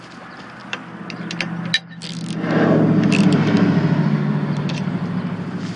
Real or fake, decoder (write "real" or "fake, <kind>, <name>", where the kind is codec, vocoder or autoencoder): real